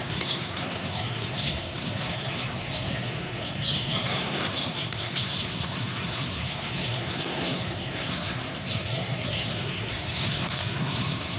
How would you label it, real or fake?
fake